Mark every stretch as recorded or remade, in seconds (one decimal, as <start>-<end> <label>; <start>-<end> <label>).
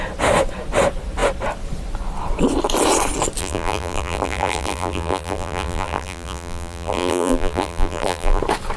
0.0-3.4 recorded; 3.4-8.4 remade; 8.4-8.8 recorded